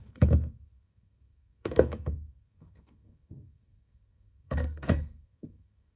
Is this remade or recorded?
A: remade